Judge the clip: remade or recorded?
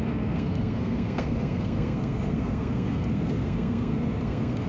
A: remade